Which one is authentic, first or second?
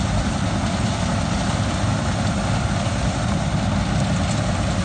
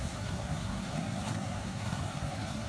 first